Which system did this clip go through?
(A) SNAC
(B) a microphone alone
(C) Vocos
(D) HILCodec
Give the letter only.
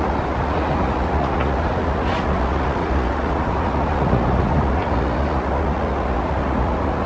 C